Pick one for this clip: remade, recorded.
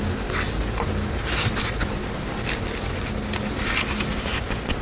recorded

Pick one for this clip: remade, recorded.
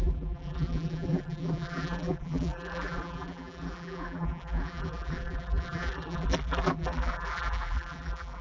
remade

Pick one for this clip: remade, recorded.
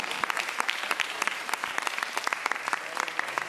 remade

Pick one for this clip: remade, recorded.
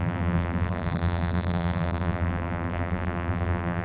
remade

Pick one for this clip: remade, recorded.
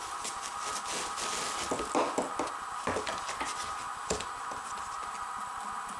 recorded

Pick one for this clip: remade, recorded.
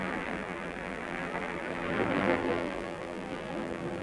remade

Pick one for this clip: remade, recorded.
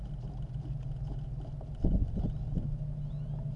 recorded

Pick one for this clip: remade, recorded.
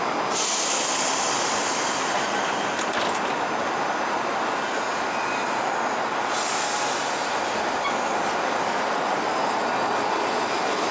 recorded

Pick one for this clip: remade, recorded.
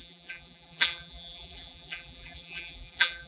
remade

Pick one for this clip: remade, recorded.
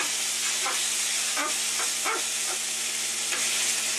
recorded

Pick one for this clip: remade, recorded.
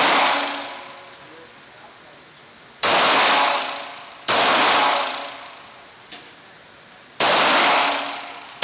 recorded